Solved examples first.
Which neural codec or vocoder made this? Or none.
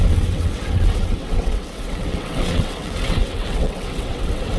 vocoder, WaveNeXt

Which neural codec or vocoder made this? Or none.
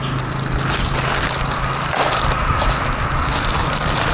none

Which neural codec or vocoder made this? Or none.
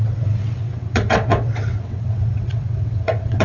vocoder, WaveNeXt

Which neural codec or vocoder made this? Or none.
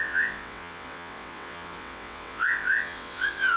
vocoder, WaveNeXt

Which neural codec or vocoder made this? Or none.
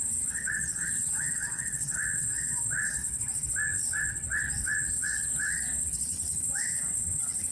vocoder, WaveNeXt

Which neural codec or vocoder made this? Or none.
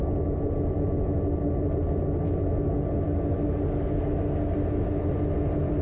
none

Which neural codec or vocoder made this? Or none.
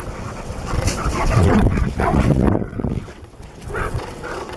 vocoder, WaveNeXt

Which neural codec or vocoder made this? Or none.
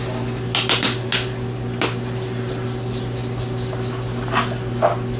none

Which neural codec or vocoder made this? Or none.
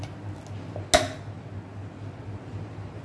none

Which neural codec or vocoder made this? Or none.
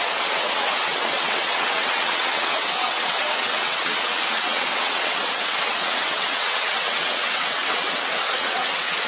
vocoder, WaveNeXt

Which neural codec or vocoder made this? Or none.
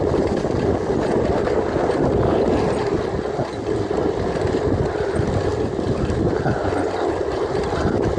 none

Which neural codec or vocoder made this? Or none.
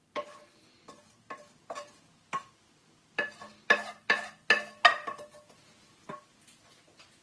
none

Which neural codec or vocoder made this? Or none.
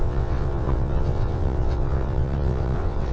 vocoder, WaveNeXt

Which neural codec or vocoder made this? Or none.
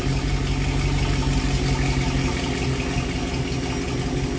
none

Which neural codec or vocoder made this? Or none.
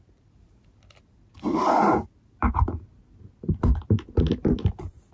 none